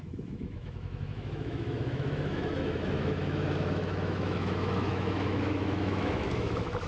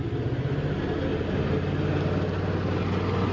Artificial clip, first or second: first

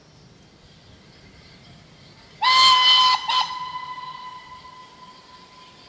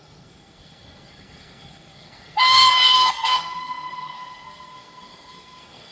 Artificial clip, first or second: second